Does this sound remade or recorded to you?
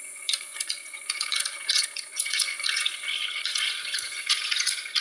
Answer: remade